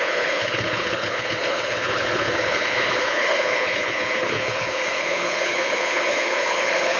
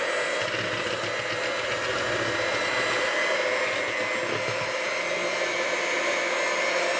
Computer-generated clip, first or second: first